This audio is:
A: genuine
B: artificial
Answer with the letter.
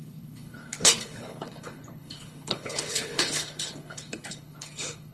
B